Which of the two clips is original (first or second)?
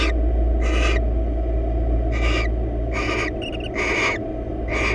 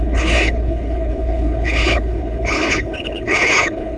first